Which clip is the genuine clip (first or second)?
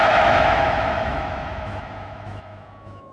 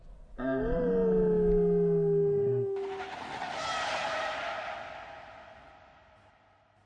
second